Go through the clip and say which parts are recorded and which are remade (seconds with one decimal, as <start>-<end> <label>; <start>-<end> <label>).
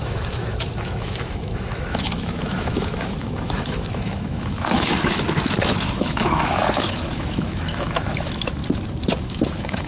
0.0-8.6 remade; 8.6-9.2 recorded; 9.2-9.9 remade